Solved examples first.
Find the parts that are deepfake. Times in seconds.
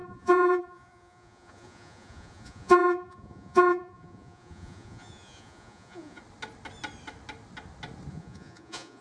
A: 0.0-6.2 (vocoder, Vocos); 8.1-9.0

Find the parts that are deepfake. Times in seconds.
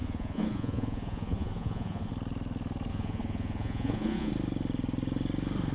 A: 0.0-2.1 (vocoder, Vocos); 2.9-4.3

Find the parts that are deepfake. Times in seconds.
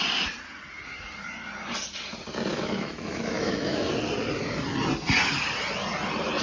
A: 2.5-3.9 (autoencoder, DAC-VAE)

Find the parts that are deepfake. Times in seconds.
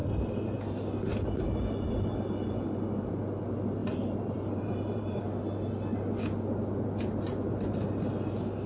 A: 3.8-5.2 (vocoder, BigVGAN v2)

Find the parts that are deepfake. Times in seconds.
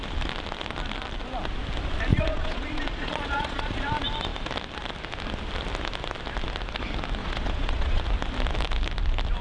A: 2.1-3.9 (vocoder, Vocos); 7.2-8.0